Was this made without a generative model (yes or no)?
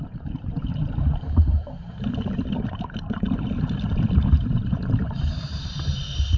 no